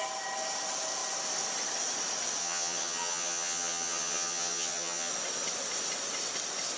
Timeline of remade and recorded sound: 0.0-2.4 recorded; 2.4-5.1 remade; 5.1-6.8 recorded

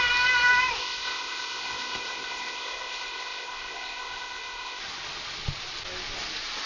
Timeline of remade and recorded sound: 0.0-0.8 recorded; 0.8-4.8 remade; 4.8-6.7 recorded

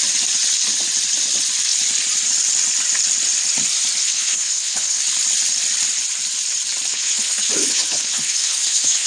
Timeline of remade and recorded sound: 0.0-4.0 recorded; 4.0-5.0 remade; 5.0-6.9 recorded; 6.9-9.1 remade